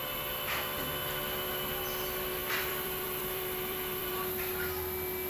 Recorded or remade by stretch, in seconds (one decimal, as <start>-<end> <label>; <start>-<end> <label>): 0.0-2.4 recorded; 2.4-4.1 remade; 4.1-5.3 recorded